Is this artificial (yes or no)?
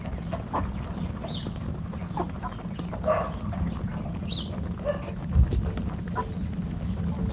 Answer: no